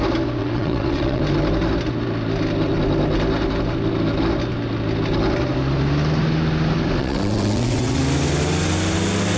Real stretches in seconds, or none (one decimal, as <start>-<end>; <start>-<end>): 0.0-0.4; 1.2-7.0; 8.0-9.4